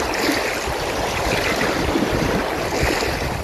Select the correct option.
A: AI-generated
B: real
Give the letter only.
B